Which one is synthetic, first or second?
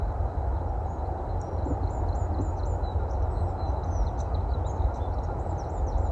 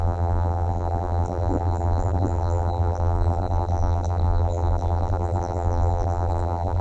second